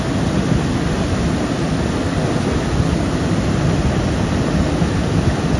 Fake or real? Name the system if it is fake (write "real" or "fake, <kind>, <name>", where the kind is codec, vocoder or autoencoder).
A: real